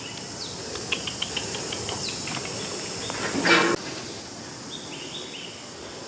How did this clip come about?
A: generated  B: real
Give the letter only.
B